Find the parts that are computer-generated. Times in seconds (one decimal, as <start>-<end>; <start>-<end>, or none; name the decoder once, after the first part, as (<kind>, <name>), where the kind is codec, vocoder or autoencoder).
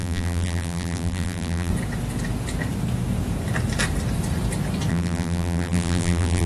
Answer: 0.0-1.7 (vocoder, BigVGAN v2); 4.9-6.5